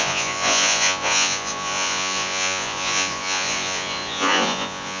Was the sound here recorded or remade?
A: remade